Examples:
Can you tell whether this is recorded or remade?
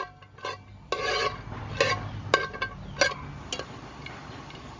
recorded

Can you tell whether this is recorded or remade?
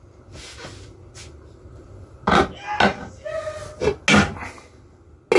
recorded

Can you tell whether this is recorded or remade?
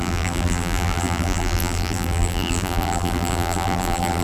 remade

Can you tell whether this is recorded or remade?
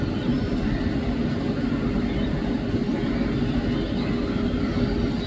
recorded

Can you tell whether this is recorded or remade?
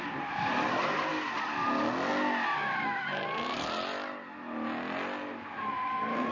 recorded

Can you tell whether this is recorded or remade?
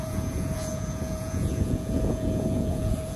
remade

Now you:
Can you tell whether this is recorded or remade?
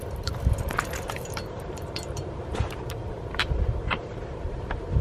remade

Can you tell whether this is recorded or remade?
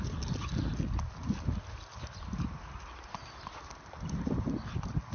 recorded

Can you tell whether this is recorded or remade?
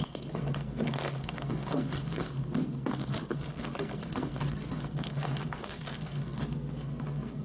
remade